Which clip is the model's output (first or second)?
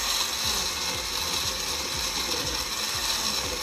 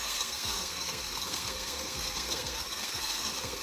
second